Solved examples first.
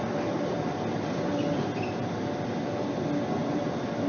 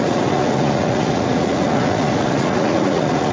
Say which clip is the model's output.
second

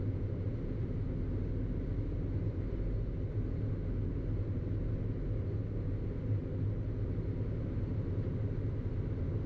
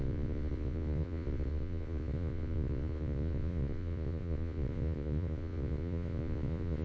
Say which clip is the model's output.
second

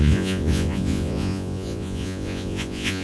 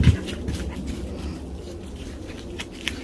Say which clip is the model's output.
first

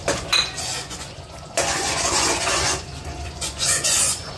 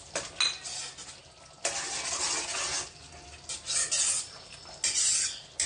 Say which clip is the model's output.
first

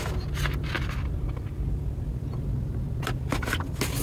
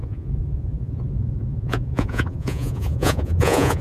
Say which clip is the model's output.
second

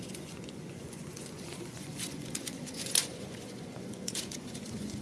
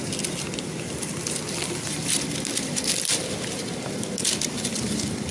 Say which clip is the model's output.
first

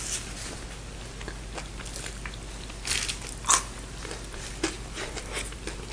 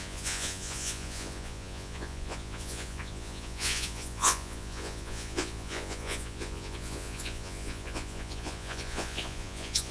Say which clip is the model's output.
second